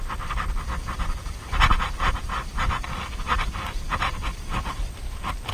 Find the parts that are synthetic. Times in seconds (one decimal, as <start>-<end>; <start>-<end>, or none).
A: 1.7-5.0